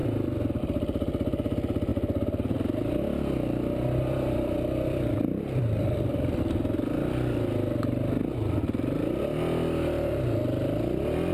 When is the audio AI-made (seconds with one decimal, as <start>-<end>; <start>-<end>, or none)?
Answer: 0.0-0.6; 1.9-6.4